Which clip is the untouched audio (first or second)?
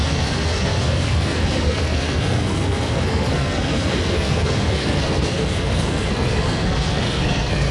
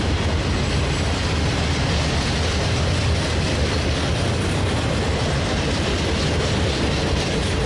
second